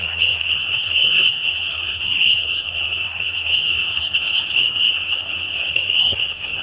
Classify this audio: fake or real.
fake